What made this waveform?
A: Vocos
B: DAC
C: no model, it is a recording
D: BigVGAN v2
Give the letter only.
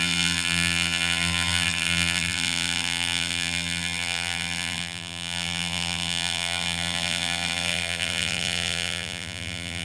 D